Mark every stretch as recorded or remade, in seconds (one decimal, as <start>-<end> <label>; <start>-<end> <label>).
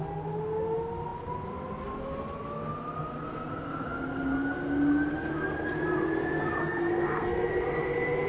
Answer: 0.0-6.6 recorded; 6.6-7.5 remade; 7.5-8.3 recorded